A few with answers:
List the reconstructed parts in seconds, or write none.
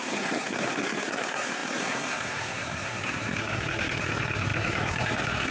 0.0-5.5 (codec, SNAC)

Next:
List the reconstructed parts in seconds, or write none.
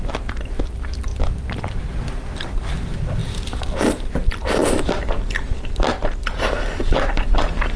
0.0-4.6 (vocoder, BigVGAN v2); 5.2-5.9; 6.5-7.8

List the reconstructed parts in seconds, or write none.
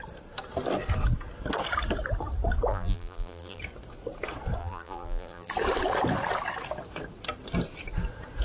2.7-3.6 (vocoder, BigVGAN v2); 4.6-5.5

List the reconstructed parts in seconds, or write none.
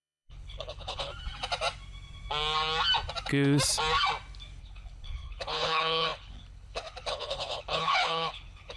0.0-1.1 (codec, HILCodec); 4.6-8.8